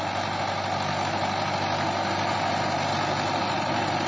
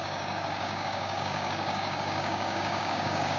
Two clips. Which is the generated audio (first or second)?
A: second